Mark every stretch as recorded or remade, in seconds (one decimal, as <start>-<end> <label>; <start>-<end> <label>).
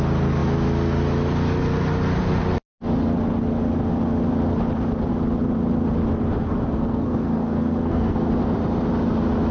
0.0-6.3 recorded; 6.3-8.3 remade; 8.3-9.5 recorded